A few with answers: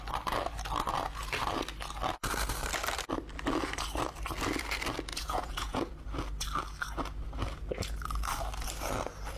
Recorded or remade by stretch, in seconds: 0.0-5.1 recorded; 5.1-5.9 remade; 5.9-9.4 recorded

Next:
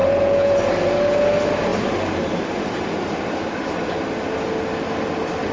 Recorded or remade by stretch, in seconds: 0.0-0.6 remade; 0.6-5.5 recorded

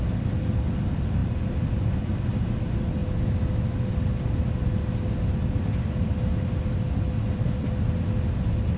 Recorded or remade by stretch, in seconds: 0.0-1.2 recorded; 1.2-2.1 remade; 2.1-8.8 recorded

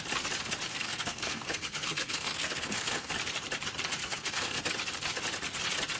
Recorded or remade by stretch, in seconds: 0.0-0.7 recorded; 0.7-3.1 remade; 3.1-4.0 recorded; 4.0-4.6 remade; 4.6-6.0 recorded

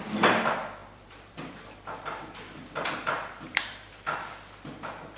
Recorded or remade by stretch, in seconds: 0.0-0.8 recorded; 0.8-3.9 remade; 3.9-5.2 recorded

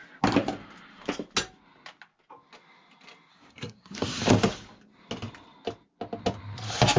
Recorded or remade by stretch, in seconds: 0.0-3.3 recorded; 3.3-4.2 remade; 4.2-7.0 recorded

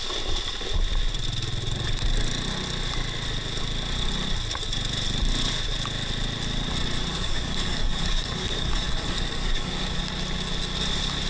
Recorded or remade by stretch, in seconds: 0.0-7.1 recorded; 7.1-10.0 remade; 10.0-11.3 recorded